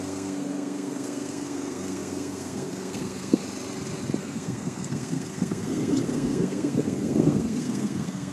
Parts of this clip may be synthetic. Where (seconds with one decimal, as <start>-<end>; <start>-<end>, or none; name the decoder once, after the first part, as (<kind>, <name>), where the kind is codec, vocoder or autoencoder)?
0.0-3.4 (codec, SNAC); 4.2-8.3